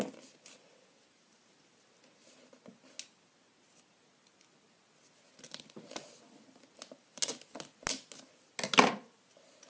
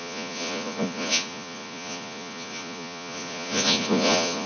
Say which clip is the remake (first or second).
second